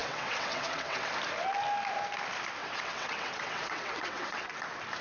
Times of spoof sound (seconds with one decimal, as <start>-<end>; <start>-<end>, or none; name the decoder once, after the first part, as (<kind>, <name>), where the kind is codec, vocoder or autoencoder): 0.0-1.1 (vocoder, WaveNeXt); 2.6-4.5